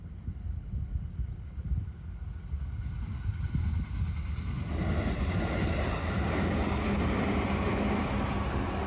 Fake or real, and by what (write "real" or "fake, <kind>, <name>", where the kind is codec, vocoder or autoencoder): real